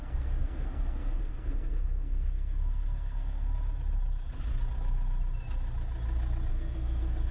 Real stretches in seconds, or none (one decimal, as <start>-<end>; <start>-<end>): 3.5-6.5